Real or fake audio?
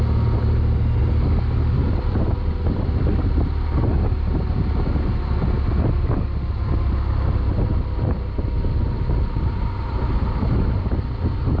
real